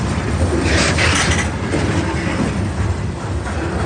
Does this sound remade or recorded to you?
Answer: recorded